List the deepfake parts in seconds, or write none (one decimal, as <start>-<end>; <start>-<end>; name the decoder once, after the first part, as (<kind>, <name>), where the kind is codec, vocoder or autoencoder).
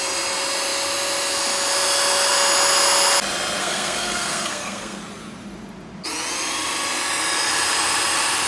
3.6-5.0 (codec, SNAC)